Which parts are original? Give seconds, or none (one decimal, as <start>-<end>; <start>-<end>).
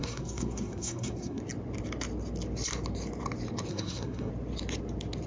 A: 1.4-3.7; 4.3-5.3